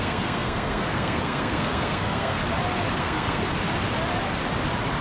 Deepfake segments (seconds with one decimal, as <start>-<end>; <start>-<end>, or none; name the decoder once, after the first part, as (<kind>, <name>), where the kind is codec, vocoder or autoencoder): 0.0-2.4 (codec, SNAC); 3.0-3.4